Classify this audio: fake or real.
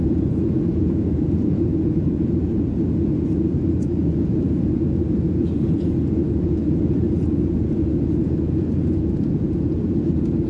fake